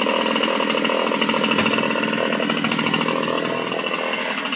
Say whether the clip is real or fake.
real